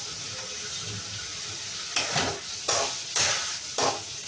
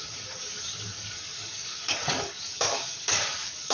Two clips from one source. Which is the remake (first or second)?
second